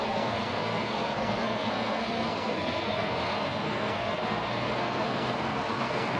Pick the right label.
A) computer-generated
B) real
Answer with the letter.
A